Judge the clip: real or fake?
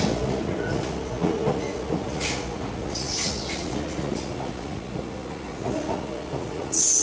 fake